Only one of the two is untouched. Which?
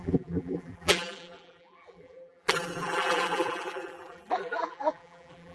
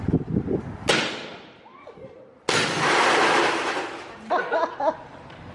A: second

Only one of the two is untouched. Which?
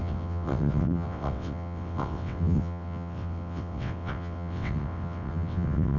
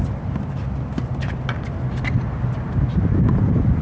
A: second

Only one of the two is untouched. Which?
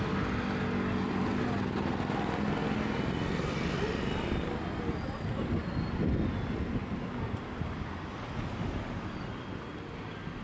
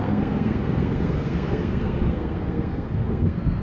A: first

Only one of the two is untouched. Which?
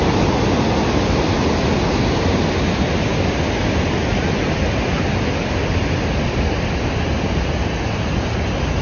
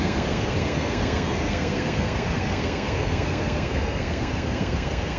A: first